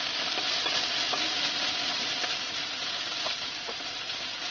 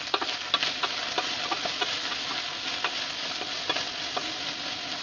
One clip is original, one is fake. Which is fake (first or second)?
first